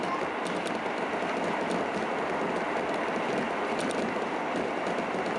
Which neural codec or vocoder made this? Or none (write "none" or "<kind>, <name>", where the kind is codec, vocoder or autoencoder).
none